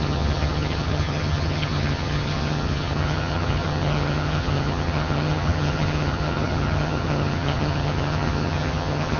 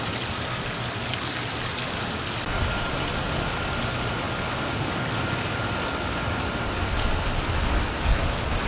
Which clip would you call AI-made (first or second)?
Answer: first